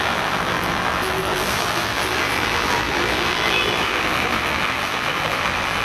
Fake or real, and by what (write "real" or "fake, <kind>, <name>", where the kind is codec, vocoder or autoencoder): fake, vocoder, BigVGAN v2